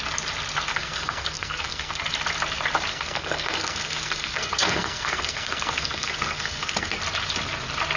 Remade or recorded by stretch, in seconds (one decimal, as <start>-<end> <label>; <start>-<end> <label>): 0.0-0.7 recorded; 0.7-2.0 remade; 2.0-2.9 recorded; 2.9-7.0 remade; 7.0-8.0 recorded